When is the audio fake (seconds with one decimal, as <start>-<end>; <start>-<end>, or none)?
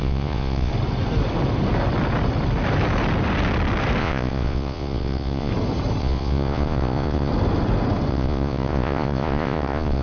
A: 0.0-0.7; 4.0-5.5; 6.0-7.3; 8.1-10.0